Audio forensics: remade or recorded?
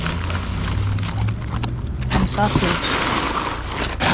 recorded